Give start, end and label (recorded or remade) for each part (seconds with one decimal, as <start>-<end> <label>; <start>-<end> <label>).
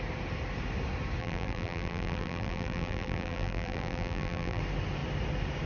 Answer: 0.0-1.2 recorded; 1.2-4.6 remade; 4.6-5.7 recorded